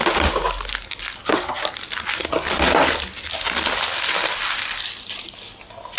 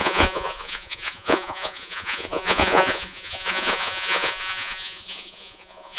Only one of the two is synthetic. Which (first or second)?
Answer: second